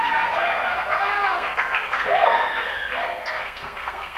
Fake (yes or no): yes